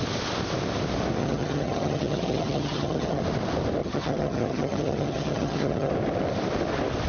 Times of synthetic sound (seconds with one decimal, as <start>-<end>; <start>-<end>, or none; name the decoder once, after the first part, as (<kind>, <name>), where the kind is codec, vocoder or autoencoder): 1.2-3.2 (vocoder, HiFi-GAN); 3.8-5.9